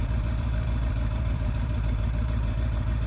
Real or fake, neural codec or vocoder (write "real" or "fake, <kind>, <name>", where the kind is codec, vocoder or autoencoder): fake, vocoder, BigVGAN v2